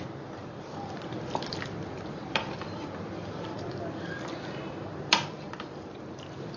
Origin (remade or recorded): remade